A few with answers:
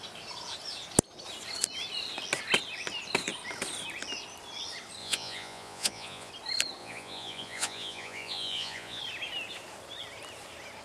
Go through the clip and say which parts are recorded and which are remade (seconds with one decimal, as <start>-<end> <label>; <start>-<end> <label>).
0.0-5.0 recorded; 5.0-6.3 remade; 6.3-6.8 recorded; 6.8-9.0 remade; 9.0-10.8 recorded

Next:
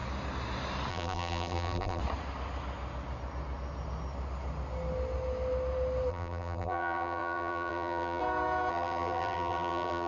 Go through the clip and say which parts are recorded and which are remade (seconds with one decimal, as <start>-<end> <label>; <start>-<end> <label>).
0.0-0.9 recorded; 0.9-2.0 remade; 2.0-6.1 recorded; 6.1-8.2 remade; 8.2-8.7 recorded; 8.7-10.1 remade

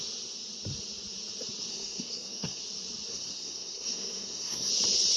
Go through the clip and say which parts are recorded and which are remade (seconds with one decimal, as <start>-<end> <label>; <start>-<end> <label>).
0.0-1.7 recorded; 1.7-2.6 remade; 2.6-3.1 recorded; 3.1-4.7 remade; 4.7-5.2 recorded

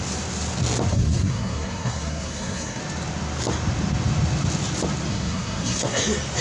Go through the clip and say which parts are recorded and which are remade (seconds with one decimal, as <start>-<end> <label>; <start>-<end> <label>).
0.0-0.9 recorded; 0.9-2.8 remade; 2.8-5.1 recorded; 5.1-6.0 remade; 6.0-6.4 recorded